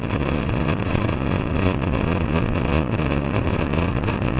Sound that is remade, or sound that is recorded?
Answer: remade